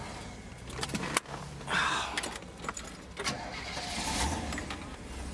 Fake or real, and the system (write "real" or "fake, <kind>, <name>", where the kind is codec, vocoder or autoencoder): real